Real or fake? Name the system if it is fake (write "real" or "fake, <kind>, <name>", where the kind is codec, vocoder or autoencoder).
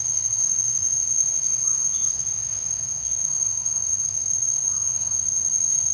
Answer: fake, autoencoder, DAC-VAE